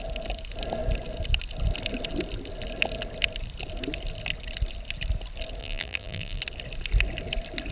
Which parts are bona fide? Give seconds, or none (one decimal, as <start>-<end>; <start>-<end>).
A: 0.0-5.6; 6.4-7.7